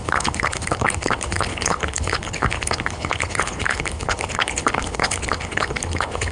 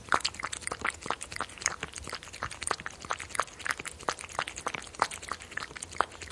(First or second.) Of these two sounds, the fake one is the first